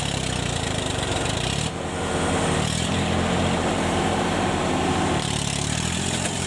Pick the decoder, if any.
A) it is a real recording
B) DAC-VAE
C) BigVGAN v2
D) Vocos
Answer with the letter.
C